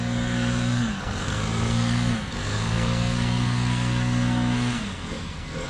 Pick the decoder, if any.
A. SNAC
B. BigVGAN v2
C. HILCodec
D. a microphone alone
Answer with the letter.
A